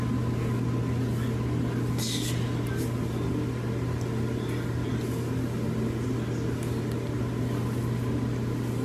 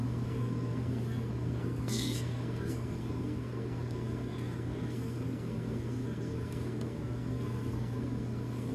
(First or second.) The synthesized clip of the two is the second